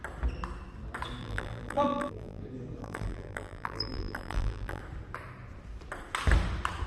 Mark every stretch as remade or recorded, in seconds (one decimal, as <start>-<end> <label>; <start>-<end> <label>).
0.0-1.2 recorded; 1.2-2.4 remade; 2.4-2.8 recorded; 2.8-4.8 remade; 4.8-6.9 recorded